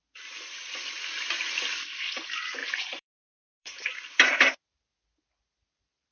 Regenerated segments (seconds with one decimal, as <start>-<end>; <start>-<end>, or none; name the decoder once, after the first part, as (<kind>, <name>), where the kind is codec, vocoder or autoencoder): 2.6-4.5 (vocoder, BigVGAN v2)